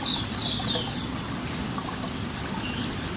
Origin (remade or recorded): recorded